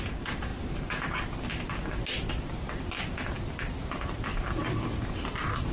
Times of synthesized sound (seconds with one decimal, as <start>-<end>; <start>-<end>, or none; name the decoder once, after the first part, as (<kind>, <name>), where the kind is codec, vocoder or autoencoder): 0.0-0.5 (vocoder, BigVGAN v2); 3.9-4.3; 5.1-5.7

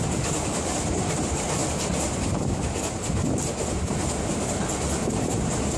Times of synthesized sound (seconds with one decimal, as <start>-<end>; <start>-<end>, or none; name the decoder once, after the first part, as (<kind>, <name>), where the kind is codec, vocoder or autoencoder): 0.0-1.6 (vocoder, BigVGAN v2); 5.1-5.8